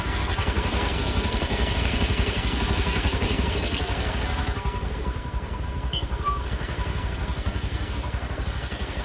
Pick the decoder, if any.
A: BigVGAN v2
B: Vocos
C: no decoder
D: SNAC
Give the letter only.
D